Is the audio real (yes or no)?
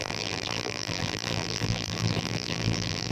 no